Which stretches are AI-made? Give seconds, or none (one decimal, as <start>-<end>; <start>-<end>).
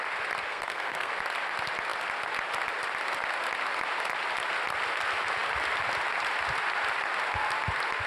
0.5-1.1